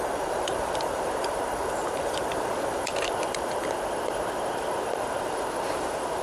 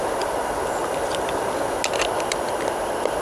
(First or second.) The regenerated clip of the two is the first